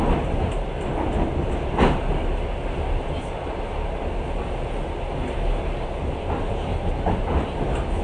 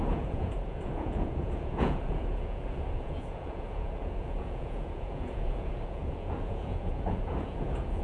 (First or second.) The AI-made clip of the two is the second